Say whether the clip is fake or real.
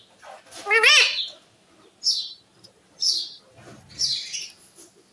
real